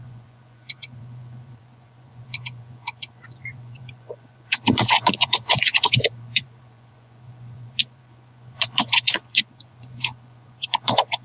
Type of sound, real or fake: fake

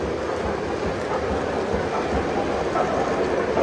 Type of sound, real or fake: real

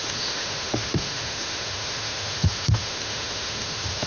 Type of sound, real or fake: fake